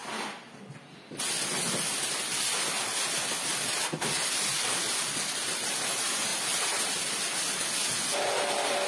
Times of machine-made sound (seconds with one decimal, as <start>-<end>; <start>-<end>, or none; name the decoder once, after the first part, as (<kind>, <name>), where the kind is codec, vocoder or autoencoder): 6.3-6.9 (vocoder, BigVGAN v2)